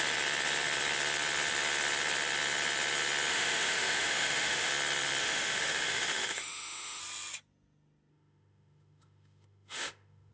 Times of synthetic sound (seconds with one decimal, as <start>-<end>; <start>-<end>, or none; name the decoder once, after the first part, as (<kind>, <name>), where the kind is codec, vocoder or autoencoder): 3.3-4.7 (autoencoder, DAC-VAE); 5.2-7.0; 8.1-10.3